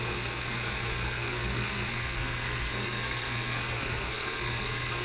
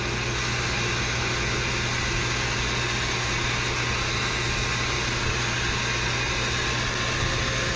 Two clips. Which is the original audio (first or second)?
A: second